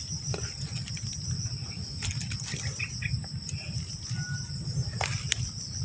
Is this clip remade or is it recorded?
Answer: recorded